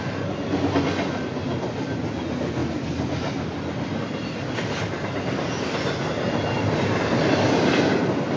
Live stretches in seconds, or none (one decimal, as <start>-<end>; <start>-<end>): 0.0-8.4